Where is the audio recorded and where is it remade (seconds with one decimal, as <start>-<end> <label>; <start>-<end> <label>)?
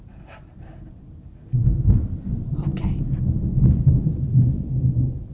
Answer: 0.0-5.3 recorded